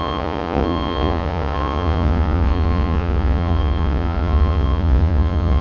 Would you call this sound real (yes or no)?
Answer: no